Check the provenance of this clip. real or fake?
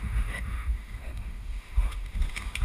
fake